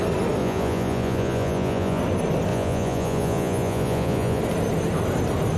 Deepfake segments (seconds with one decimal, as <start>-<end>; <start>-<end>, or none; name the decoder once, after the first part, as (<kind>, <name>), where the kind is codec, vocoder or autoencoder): 0.4-2.0 (vocoder, Vocos); 2.5-4.4

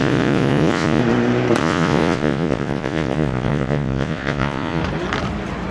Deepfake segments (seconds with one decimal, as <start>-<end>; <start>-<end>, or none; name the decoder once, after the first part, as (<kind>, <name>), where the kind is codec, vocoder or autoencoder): 0.0-1.0 (vocoder, Vocos); 1.6-4.8